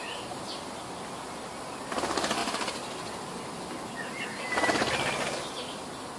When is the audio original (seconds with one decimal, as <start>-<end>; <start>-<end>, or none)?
2.4-6.2